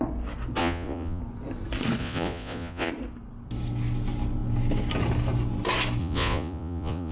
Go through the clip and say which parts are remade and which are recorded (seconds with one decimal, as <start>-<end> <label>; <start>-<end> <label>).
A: 0.0-0.6 recorded; 0.6-1.2 remade; 1.2-2.0 recorded; 2.0-2.9 remade; 2.9-6.0 recorded; 6.0-7.1 remade